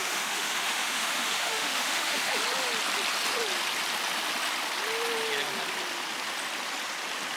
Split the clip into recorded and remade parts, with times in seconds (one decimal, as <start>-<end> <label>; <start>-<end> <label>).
0.0-2.4 remade; 2.4-7.4 recorded